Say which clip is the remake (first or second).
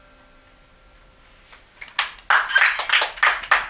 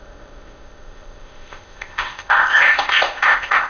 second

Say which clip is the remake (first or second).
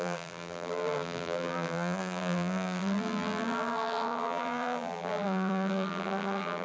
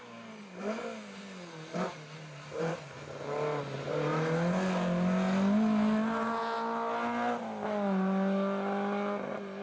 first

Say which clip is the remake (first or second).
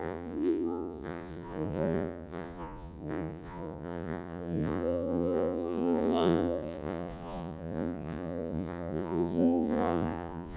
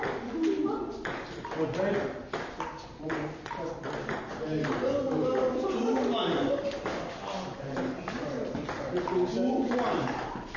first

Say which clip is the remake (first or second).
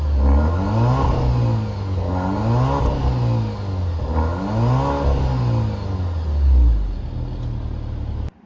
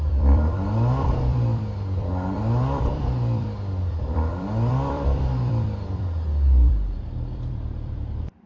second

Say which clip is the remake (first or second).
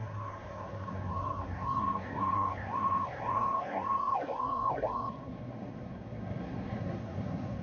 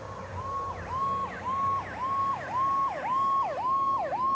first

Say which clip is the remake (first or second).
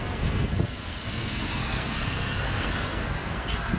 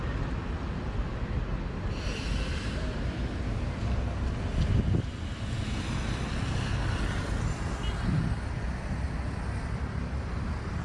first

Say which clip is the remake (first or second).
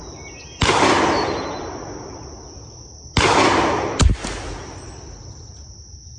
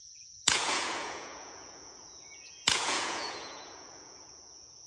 second